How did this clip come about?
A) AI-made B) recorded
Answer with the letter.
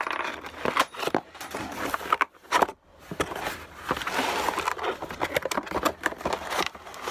B